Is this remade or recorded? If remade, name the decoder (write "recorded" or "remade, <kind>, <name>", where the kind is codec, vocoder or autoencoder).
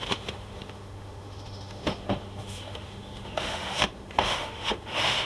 remade, autoencoder, DAC-VAE